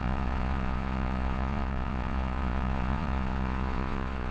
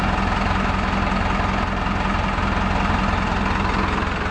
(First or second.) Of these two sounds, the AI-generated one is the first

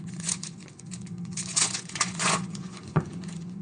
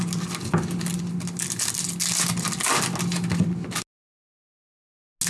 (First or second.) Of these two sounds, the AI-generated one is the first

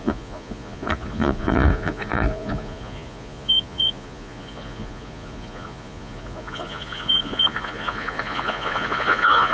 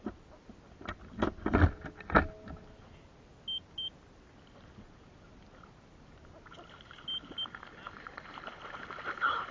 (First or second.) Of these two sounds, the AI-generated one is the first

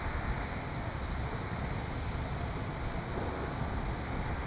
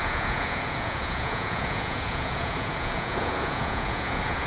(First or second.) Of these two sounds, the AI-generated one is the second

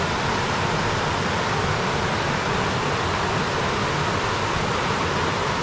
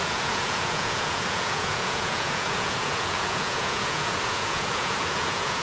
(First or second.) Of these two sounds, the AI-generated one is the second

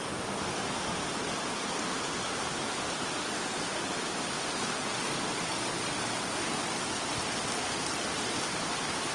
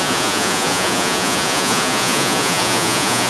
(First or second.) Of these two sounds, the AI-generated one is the second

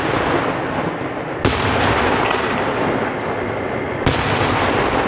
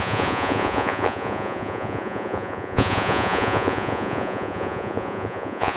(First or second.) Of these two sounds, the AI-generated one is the second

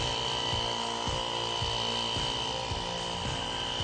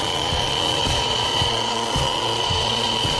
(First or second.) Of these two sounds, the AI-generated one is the second